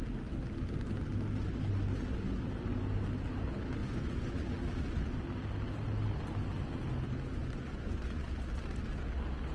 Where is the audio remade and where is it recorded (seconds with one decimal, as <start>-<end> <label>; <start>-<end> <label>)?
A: 0.0-3.8 recorded; 3.8-4.5 remade; 4.5-7.4 recorded; 7.4-8.3 remade; 8.3-9.5 recorded